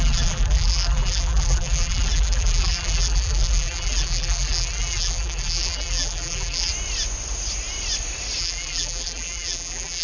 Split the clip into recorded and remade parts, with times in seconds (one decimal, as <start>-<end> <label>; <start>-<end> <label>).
0.0-6.7 remade; 6.7-8.4 recorded; 8.4-10.0 remade